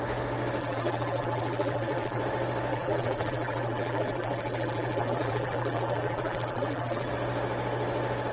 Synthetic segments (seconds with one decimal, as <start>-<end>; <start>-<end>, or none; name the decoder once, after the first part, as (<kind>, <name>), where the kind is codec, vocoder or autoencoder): 0.6-2.2 (vocoder, BigVGAN v2); 2.7-7.1